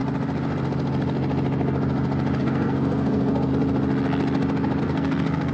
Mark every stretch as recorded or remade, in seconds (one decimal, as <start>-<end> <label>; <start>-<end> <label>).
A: 0.0-2.4 recorded; 2.4-3.5 remade; 3.5-4.8 recorded; 4.8-5.5 remade